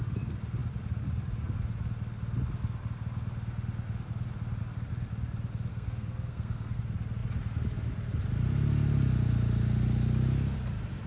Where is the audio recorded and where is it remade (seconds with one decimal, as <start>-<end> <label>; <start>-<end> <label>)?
0.0-5.7 recorded; 5.7-6.8 remade; 6.8-11.1 recorded